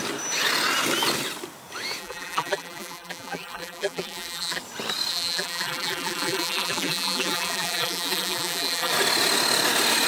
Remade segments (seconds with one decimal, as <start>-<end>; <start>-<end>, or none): 2.0-4.6; 5.1-8.9